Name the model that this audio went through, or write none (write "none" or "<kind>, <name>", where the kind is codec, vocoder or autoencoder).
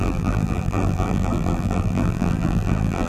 vocoder, BigVGAN v2